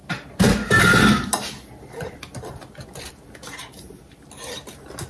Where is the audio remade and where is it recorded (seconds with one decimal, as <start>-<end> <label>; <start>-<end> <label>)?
0.0-5.1 recorded